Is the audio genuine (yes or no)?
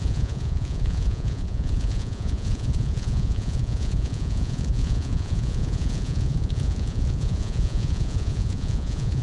no